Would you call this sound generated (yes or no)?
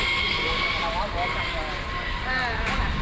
no